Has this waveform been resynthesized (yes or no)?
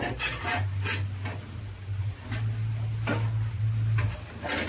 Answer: no